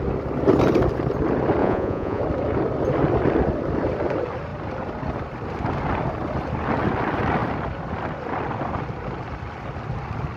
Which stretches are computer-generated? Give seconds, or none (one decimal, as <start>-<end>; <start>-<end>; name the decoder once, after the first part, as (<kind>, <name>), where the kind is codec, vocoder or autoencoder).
1.6-2.2 (vocoder, Vocos)